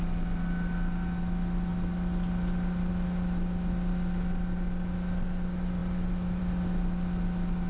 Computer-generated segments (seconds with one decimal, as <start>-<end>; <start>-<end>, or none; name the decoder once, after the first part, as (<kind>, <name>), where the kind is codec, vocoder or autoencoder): none